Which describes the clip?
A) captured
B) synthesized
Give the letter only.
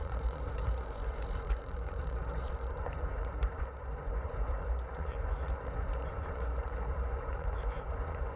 B